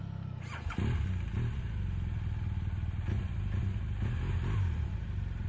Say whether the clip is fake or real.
real